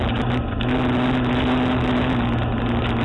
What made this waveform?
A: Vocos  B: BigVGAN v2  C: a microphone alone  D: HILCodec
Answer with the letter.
C